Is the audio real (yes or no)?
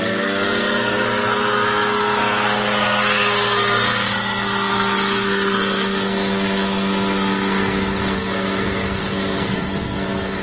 no